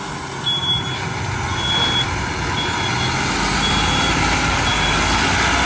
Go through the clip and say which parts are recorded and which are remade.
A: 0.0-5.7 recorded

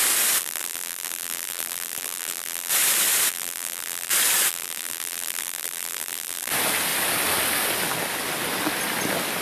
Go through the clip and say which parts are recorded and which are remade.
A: 0.0-0.4 recorded; 0.4-2.7 remade; 2.7-3.3 recorded; 3.3-4.1 remade; 4.1-4.5 recorded; 4.5-6.5 remade; 6.5-9.4 recorded

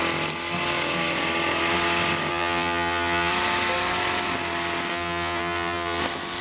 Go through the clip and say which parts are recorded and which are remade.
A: 0.0-2.3 recorded; 2.3-3.3 remade; 3.3-4.9 recorded; 4.9-6.0 remade; 6.0-6.4 recorded

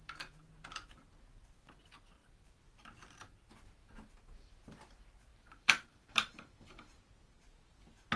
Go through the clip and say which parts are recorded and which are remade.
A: 0.0-5.3 recorded; 5.3-7.0 remade; 7.0-8.2 recorded

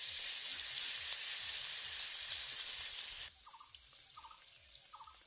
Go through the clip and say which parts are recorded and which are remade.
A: 0.0-5.3 recorded

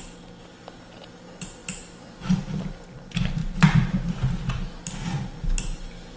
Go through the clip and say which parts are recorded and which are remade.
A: 0.0-6.2 recorded

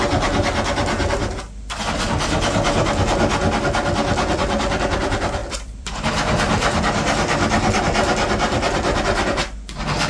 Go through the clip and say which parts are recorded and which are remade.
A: 0.0-5.4 recorded; 5.4-7.8 remade; 7.8-10.1 recorded